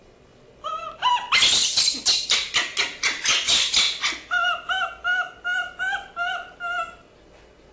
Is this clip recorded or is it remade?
recorded